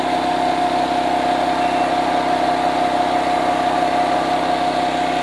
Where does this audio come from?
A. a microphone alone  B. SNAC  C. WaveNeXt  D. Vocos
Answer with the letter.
A